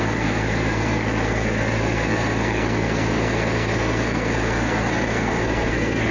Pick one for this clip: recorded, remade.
remade